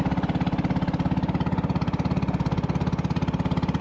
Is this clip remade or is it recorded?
recorded